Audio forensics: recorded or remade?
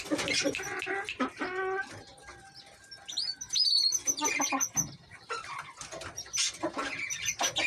recorded